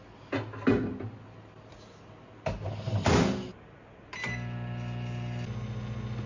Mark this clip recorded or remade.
recorded